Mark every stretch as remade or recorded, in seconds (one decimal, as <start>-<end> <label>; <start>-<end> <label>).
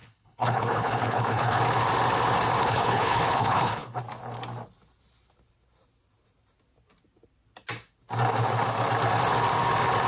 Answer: 0.0-1.6 remade; 1.6-2.6 recorded; 2.6-4.0 remade; 4.0-10.1 recorded